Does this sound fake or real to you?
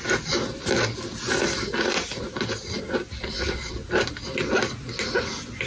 real